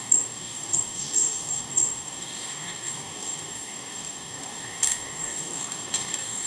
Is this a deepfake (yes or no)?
yes